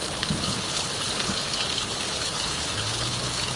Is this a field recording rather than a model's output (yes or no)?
no